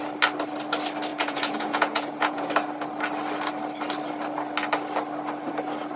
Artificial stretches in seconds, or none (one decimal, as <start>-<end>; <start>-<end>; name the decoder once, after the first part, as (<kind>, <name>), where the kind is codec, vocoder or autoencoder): 1.1-2.5 (vocoder, Vocos)